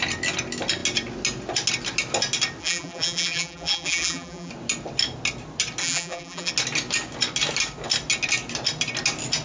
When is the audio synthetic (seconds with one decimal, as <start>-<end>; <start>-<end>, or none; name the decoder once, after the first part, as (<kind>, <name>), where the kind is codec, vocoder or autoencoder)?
2.6-4.5 (vocoder, BigVGAN v2); 5.8-6.5